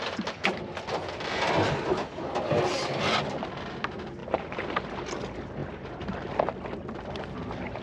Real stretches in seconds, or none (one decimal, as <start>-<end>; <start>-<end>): 0.0-4.2; 4.9-5.6; 6.3-7.8